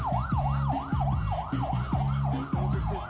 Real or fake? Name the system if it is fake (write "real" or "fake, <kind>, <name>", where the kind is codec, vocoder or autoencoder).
real